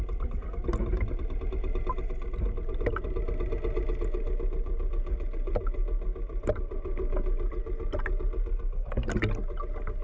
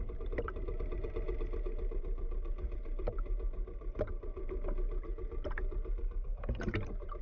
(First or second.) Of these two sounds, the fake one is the second